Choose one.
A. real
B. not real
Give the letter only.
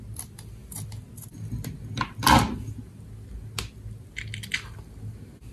A